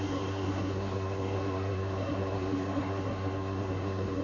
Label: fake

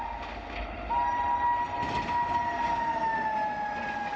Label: real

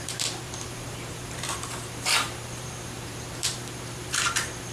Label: fake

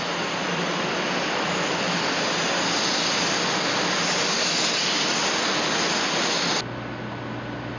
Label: real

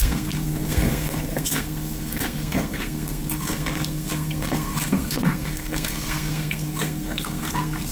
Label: fake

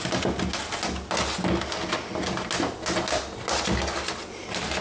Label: real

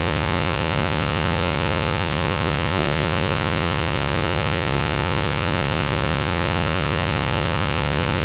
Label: fake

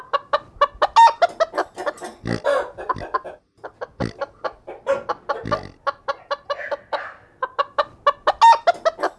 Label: real